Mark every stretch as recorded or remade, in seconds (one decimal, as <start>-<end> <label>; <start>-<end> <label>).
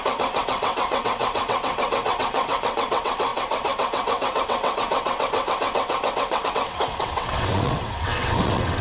0.0-8.8 remade